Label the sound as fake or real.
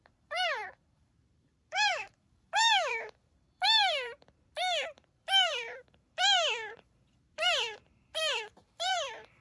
fake